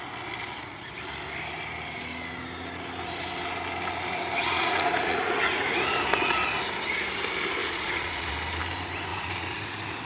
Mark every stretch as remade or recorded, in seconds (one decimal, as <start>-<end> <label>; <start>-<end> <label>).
0.0-4.4 recorded; 4.4-5.8 remade; 5.8-7.6 recorded; 7.6-8.3 remade; 8.3-9.1 recorded; 9.1-10.0 remade